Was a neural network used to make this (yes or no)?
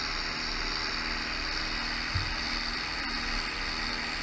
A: no